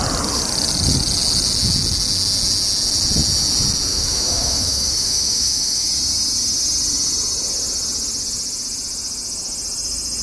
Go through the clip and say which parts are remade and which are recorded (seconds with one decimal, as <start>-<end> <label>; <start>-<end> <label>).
0.0-3.9 recorded; 3.9-5.9 remade; 5.9-10.2 recorded